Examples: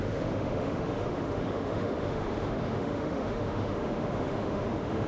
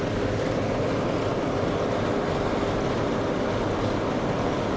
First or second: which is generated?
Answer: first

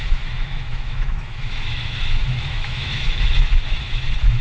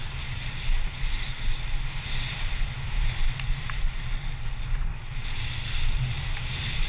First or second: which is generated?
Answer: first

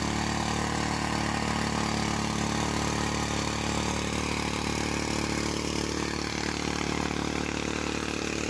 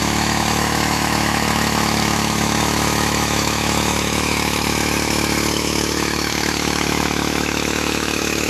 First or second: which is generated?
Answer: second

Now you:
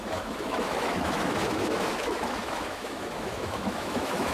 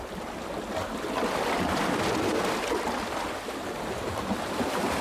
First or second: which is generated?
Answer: first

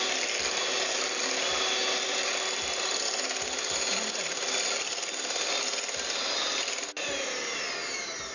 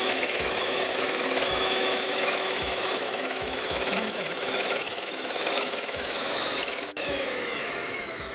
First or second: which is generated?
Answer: second